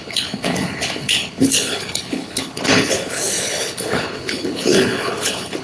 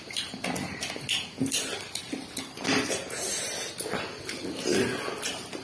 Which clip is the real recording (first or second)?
second